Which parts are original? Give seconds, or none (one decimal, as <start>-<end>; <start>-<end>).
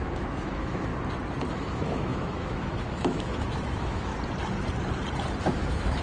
0.9-1.5; 4.1-5.4